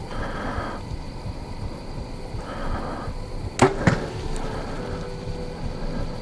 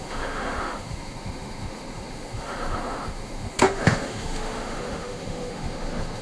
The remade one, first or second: second